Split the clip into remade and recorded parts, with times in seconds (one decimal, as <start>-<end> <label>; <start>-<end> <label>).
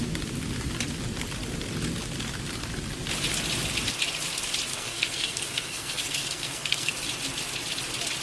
0.0-4.7 recorded; 4.7-6.9 remade; 6.9-8.2 recorded